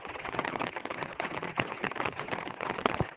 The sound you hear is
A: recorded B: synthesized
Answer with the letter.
B